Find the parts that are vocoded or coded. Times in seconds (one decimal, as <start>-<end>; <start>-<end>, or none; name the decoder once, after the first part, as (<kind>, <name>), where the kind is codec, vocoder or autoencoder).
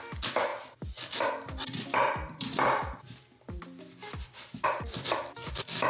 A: 0.5-3.6 (vocoder, BigVGAN v2); 4.0-5.5